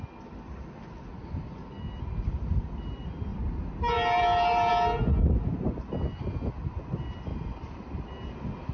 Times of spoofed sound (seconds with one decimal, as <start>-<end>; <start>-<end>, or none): 3.3-4.7; 7.3-8.1